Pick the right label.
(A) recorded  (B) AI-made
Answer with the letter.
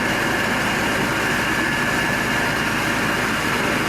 A